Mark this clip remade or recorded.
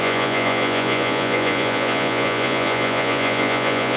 remade